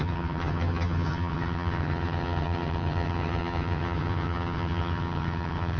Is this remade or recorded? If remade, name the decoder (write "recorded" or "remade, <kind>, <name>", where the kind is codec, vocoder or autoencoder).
remade, vocoder, HiFi-GAN